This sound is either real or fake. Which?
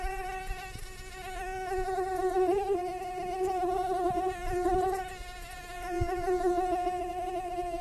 fake